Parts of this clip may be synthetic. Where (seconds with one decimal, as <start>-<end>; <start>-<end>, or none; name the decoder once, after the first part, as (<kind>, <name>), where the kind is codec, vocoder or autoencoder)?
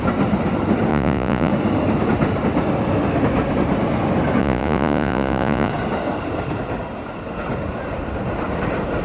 0.9-1.5 (vocoder, Vocos); 4.4-5.7